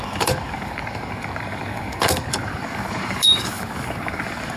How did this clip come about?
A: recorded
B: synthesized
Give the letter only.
B